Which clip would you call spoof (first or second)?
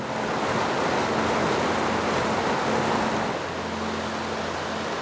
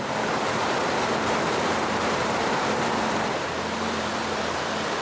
second